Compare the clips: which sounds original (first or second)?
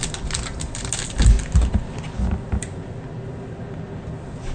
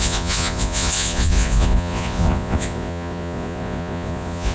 first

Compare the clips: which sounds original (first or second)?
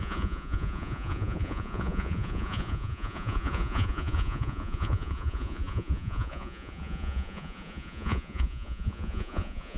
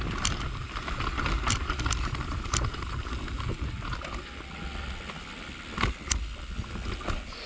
second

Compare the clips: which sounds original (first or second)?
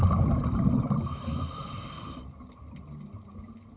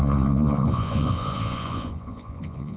first